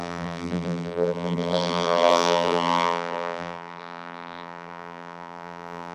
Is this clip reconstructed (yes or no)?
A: yes